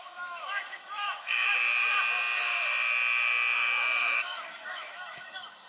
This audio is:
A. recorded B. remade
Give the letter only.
B